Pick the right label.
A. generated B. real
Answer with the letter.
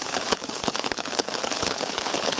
A